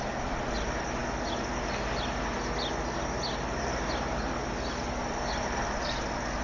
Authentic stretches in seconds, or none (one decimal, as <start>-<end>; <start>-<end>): 0.0-6.4